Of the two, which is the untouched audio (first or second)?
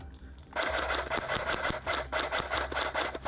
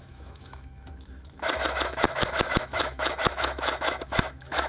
first